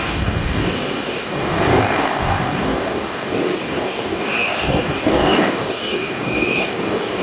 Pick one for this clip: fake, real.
fake